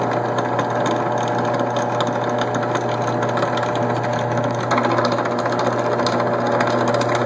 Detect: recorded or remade recorded